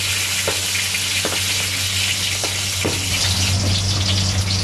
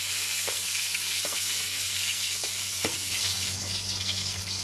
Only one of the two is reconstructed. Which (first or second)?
second